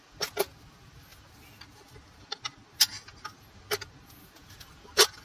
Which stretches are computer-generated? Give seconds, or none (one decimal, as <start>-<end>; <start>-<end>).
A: none